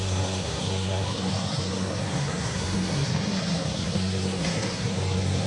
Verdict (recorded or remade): remade